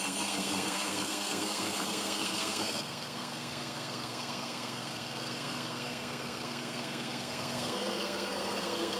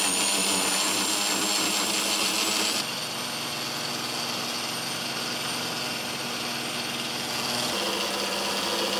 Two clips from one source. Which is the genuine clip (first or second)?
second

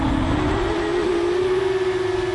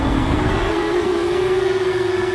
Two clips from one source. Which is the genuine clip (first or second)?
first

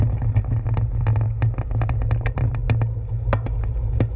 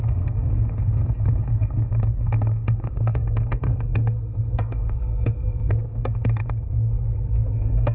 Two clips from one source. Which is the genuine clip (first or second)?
first